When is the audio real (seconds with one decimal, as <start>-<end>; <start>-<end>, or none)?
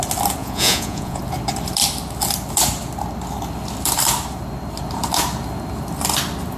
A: 0.0-0.4; 1.2-6.6